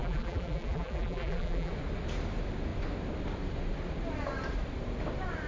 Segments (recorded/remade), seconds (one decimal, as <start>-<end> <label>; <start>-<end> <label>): 0.0-1.7 remade; 1.7-5.5 recorded